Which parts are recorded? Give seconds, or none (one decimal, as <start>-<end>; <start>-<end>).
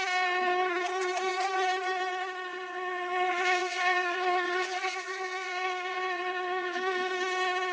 0.0-2.5; 7.1-7.7